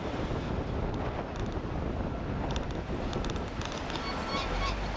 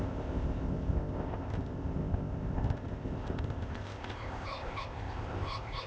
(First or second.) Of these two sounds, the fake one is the second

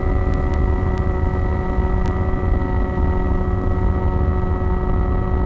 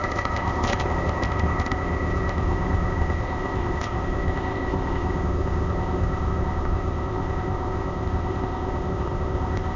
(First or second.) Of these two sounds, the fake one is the second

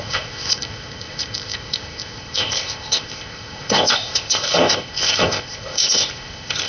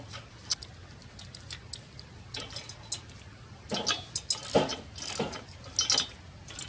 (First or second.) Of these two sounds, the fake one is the first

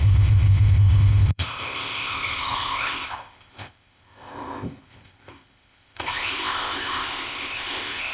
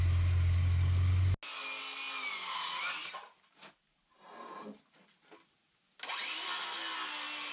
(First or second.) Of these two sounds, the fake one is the first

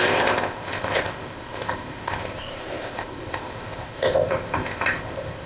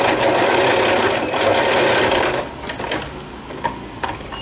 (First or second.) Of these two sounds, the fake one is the first